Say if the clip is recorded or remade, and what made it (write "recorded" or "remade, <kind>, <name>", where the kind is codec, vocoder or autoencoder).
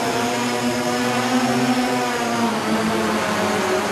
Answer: recorded